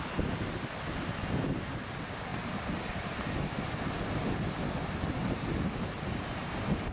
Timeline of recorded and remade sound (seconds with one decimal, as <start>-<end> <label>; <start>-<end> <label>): 0.0-2.3 recorded; 2.3-3.3 remade; 3.3-5.2 recorded; 5.2-6.9 remade